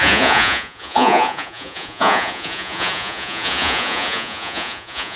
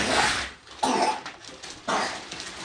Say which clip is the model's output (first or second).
first